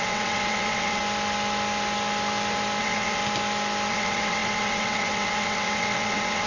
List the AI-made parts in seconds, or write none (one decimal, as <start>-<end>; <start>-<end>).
0.0-1.0; 2.8-3.2; 3.9-6.5